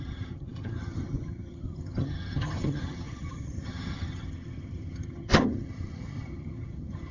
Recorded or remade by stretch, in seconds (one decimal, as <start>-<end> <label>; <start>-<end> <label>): 0.0-7.1 remade